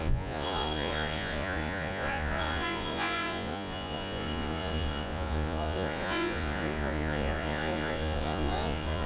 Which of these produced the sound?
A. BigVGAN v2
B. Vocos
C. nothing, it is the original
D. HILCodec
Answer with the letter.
B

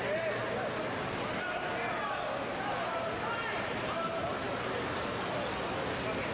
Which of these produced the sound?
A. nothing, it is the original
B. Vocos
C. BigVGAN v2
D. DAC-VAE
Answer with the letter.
A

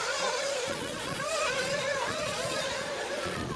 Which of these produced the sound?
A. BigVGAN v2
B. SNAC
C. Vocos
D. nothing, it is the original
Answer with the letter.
C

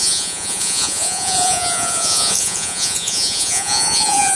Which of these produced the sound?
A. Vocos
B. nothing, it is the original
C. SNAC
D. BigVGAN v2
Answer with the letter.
A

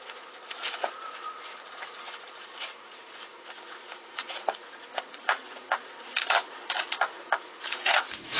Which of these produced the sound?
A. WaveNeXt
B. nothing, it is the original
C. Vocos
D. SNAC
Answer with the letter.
C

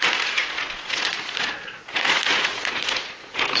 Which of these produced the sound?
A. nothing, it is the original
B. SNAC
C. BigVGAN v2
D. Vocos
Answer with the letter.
D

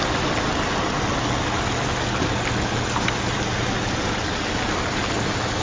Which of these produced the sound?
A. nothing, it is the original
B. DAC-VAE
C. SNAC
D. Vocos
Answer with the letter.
A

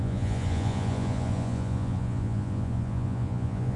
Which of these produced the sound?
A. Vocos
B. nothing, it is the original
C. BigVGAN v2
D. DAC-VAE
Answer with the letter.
A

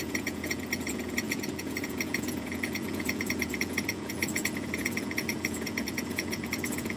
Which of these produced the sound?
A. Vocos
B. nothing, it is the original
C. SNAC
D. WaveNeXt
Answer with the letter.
A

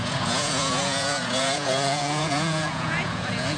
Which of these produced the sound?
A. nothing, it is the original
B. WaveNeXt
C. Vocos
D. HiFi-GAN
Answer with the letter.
C